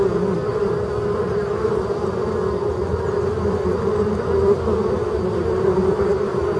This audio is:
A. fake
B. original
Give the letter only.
B